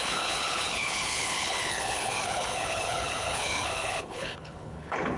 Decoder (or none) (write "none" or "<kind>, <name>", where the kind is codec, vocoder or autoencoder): codec, HILCodec